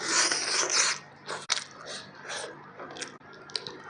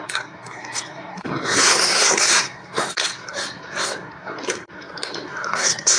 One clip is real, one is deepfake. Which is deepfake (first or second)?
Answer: second